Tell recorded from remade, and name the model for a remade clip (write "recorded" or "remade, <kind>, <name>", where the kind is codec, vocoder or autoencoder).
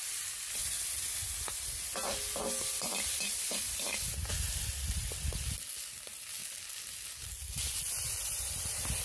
recorded